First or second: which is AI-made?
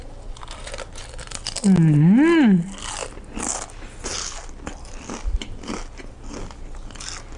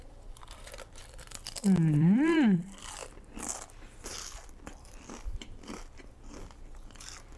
second